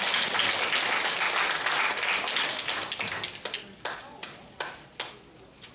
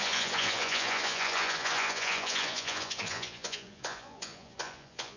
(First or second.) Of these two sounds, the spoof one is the second